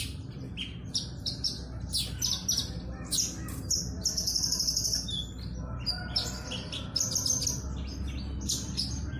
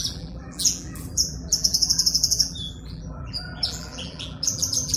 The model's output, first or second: second